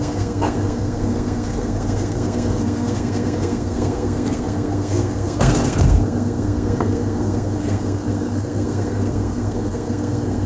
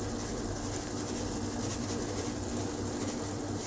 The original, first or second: second